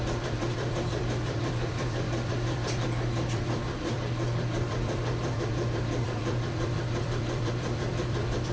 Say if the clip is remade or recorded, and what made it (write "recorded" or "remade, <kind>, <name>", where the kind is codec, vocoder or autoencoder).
remade, vocoder, BigVGAN v2